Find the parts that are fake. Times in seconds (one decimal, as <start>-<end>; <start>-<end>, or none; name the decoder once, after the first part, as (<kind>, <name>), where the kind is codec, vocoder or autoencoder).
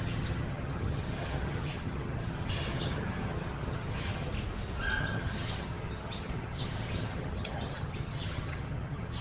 0.0-4.3 (vocoder, HiFi-GAN); 5.0-9.2